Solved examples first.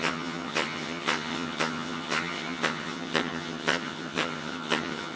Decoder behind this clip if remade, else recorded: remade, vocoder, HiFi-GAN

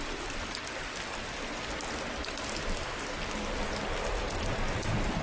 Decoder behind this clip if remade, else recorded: recorded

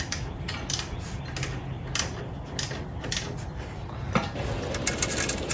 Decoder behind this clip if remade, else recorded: recorded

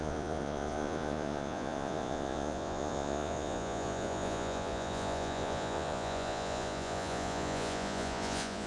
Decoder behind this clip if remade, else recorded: remade, vocoder, Vocos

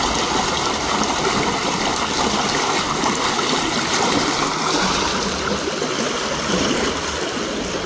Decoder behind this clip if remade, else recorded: recorded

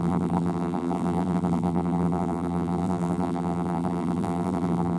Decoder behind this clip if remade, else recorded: remade, vocoder, BigVGAN v2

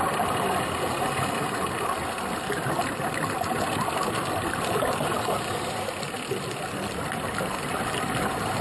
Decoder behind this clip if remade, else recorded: recorded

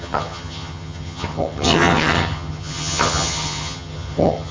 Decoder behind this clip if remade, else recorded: remade, vocoder, HiFi-GAN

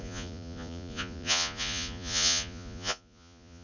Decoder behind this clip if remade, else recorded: remade, vocoder, Vocos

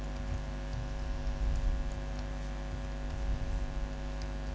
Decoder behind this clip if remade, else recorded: recorded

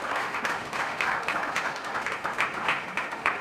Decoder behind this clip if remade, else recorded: remade, autoencoder, DAC-VAE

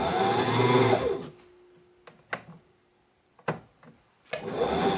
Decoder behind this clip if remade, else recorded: recorded